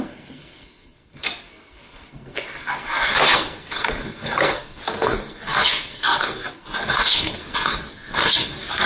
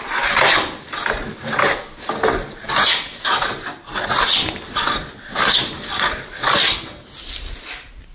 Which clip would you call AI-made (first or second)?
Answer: first